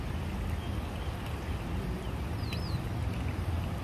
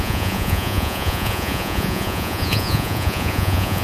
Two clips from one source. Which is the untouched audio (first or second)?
first